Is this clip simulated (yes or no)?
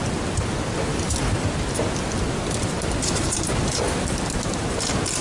yes